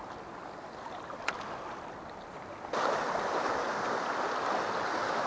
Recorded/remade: recorded